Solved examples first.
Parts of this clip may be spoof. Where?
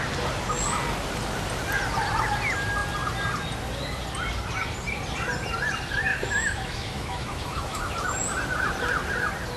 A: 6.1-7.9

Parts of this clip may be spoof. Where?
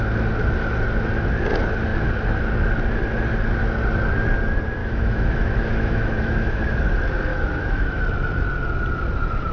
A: 4.8-6.7; 7.3-8.0